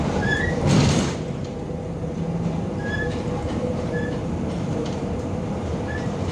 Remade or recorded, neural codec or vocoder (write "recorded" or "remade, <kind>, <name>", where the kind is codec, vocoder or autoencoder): remade, vocoder, BigVGAN v2